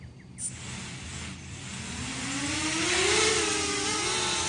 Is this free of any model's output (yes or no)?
yes